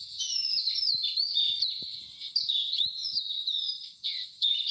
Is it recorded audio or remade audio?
recorded